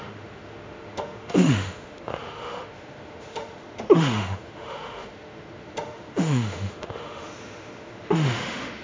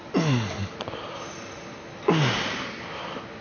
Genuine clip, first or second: second